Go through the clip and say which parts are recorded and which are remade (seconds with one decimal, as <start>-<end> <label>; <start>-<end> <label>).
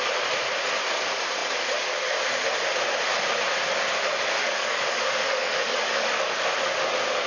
0.0-4.4 recorded; 4.4-6.3 remade; 6.3-7.3 recorded